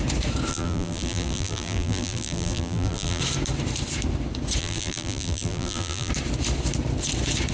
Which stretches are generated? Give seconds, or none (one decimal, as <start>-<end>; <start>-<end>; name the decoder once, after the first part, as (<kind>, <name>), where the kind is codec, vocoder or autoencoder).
0.5-3.2 (vocoder, BigVGAN v2); 4.6-6.1